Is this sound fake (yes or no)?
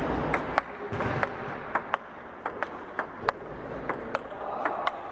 no